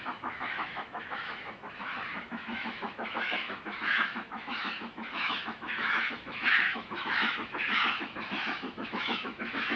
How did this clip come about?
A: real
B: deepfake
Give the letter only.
B